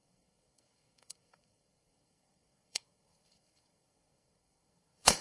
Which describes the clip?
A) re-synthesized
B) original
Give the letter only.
A